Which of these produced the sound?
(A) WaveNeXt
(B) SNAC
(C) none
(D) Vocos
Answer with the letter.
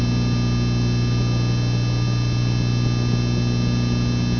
C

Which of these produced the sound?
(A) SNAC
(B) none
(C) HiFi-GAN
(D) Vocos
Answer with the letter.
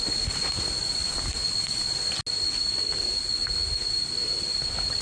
B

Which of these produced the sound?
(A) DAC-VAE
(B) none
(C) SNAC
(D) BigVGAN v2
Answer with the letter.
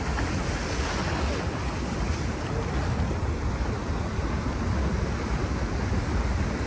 B